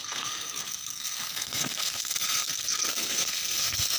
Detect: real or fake fake